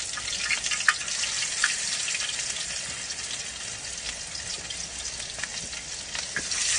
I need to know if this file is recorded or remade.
recorded